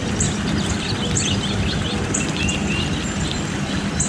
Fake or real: real